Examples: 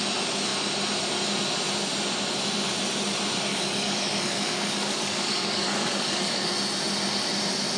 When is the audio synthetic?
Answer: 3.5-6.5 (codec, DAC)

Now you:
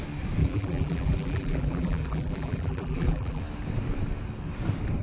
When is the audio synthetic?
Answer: 0.4-3.4 (vocoder, BigVGAN v2)

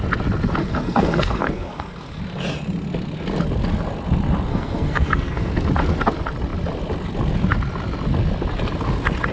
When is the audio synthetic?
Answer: 0.6-2.2 (codec, SNAC); 4.5-5.5

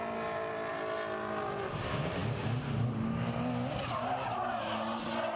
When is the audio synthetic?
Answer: none

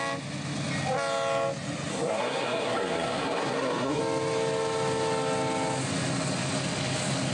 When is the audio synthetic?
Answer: 1.9-4.0 (codec, SNAC)

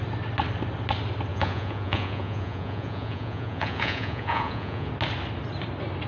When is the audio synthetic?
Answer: 1.3-4.9 (vocoder, Vocos)

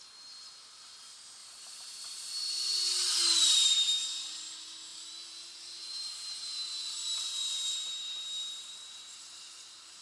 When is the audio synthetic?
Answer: 1.4-3.9 (vocoder, BigVGAN v2); 4.9-8.7